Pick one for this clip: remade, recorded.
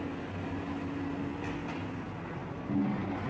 recorded